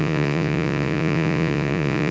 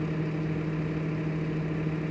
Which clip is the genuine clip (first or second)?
second